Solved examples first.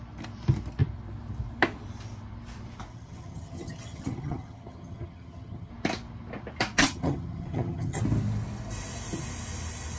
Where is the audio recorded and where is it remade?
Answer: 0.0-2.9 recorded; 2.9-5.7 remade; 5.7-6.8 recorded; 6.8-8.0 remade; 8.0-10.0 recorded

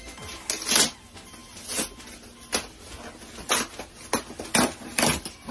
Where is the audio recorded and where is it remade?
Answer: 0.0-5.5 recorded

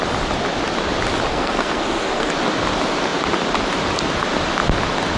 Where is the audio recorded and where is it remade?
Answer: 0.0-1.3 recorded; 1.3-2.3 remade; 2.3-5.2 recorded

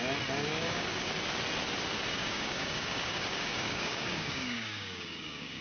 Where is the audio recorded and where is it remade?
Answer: 0.0-0.4 recorded; 0.4-1.1 remade; 1.1-2.1 recorded; 2.1-5.6 remade